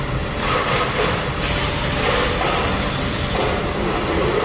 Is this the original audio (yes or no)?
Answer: yes